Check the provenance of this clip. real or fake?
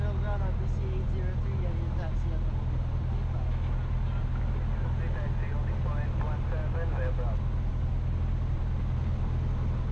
real